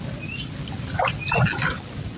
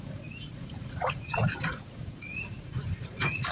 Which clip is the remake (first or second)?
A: second